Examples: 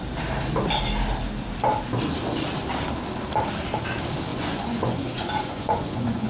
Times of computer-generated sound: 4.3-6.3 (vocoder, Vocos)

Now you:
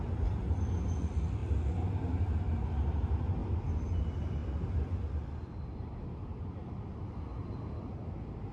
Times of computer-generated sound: none

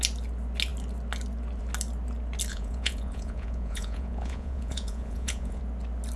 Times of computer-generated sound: 2.5-5.6 (vocoder, Vocos)

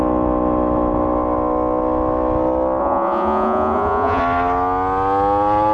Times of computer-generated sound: 2.8-4.2 (vocoder, Vocos)

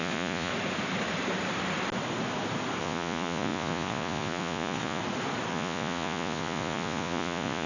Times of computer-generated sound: 0.0-0.5 (vocoder, Vocos); 2.8-5.0; 5.5-7.7

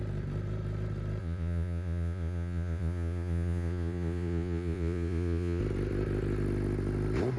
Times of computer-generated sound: 1.2-5.6 (vocoder, Vocos)

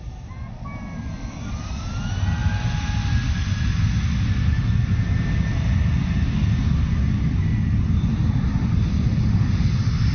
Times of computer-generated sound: none

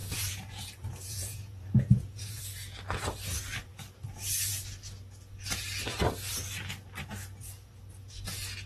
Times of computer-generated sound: 0.0-2.4 (vocoder, Vocos)